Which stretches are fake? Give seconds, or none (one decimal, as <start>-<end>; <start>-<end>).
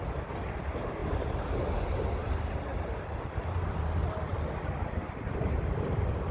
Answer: none